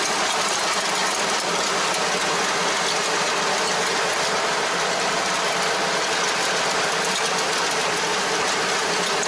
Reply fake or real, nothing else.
real